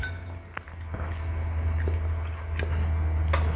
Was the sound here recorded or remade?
recorded